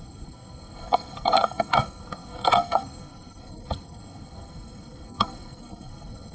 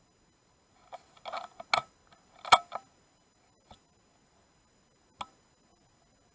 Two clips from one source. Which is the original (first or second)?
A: second